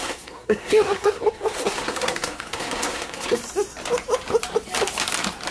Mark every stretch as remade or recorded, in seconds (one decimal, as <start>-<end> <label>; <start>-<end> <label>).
0.0-3.4 remade; 3.4-5.5 recorded